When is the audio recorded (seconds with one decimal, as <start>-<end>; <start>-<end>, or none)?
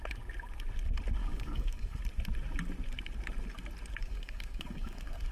0.0-1.2; 2.0-4.0